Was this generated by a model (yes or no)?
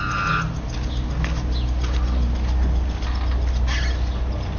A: no